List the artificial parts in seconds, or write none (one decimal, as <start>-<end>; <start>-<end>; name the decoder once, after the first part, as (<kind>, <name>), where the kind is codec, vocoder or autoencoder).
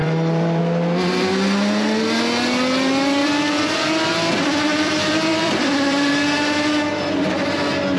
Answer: 0.0-0.6 (vocoder, BigVGAN v2); 3.2-4.1; 4.7-6.1